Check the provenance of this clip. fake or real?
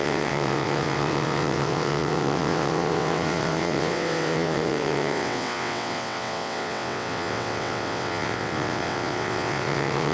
fake